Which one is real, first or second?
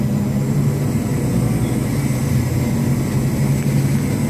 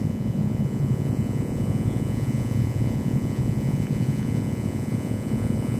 first